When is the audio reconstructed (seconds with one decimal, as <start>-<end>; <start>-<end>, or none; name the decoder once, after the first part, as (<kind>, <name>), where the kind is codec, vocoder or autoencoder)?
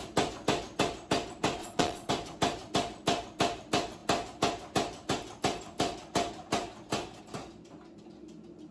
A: 1.6-2.1 (vocoder, Vocos)